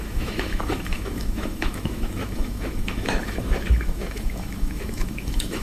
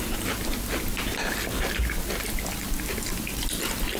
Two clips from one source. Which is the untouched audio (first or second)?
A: second